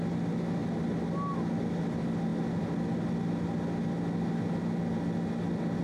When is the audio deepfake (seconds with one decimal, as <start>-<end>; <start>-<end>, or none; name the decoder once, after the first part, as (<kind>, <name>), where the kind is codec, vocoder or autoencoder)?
none